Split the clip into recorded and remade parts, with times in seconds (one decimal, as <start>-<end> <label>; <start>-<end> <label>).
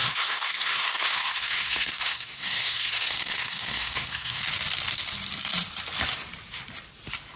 0.0-4.4 remade; 4.4-7.4 recorded